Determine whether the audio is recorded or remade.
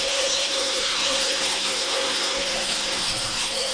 remade